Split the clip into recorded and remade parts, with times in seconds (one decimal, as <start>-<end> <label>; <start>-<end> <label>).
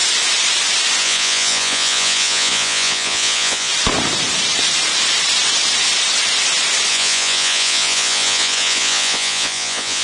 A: 0.0-1.0 recorded; 1.0-3.7 remade; 3.7-6.9 recorded; 6.9-10.0 remade